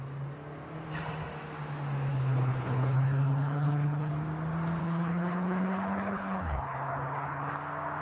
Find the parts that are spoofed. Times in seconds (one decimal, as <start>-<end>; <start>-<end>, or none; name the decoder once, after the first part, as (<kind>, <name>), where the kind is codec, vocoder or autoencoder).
2.1-4.1 (codec, HILCodec); 4.8-7.5